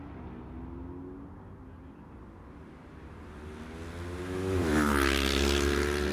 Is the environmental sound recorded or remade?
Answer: recorded